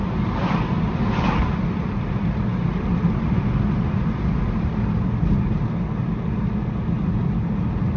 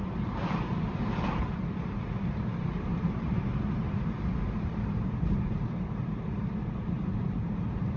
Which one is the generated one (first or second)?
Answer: second